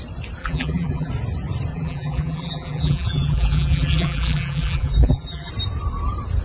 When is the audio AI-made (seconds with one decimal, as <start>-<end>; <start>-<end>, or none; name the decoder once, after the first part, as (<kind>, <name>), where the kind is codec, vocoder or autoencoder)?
0.4-1.1 (vocoder, BigVGAN v2); 1.7-5.5